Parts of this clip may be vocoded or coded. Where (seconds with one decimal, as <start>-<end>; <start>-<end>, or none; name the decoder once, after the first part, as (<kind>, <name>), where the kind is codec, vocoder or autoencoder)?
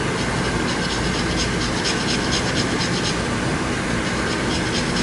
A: 3.5-4.0 (vocoder, BigVGAN v2)